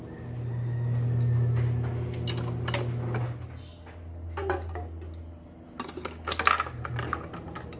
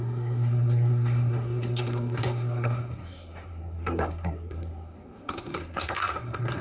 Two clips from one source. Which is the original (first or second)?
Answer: first